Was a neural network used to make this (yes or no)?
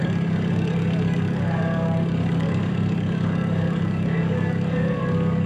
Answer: yes